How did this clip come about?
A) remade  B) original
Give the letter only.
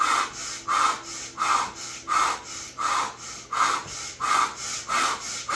B